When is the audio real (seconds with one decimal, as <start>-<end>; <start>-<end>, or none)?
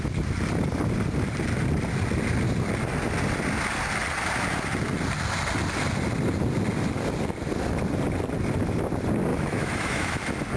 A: 0.0-9.3; 10.2-10.6